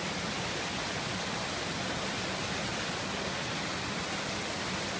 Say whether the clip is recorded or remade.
recorded